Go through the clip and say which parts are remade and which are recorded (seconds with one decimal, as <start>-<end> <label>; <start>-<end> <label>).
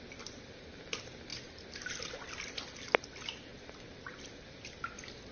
0.0-1.3 recorded; 1.3-2.0 remade; 2.0-5.3 recorded